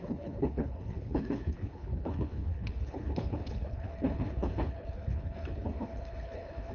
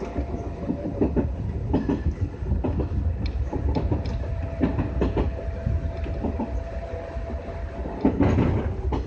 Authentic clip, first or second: second